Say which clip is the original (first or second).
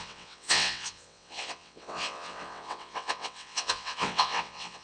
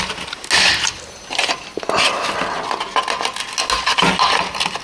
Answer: second